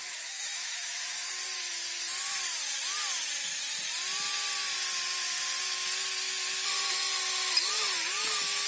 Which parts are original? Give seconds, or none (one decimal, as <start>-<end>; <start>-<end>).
1.3-8.7